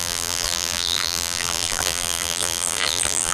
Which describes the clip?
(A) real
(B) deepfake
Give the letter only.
B